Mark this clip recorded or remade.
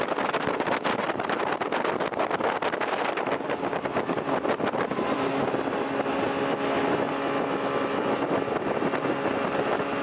recorded